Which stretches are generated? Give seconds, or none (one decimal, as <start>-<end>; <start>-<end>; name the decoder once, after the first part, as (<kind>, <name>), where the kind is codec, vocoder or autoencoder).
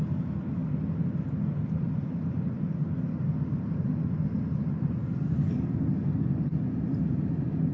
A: 0.6-4.0 (vocoder, BigVGAN v2); 5.0-7.7